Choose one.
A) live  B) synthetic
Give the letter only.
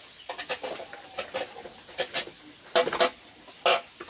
A